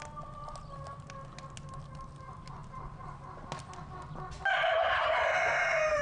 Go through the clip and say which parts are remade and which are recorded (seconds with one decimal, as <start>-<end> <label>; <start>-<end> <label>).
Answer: 0.0-6.0 recorded